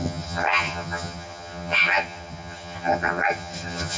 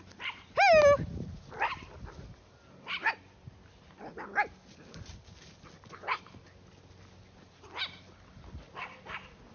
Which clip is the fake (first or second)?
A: first